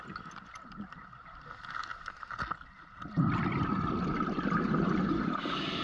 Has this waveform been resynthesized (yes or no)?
no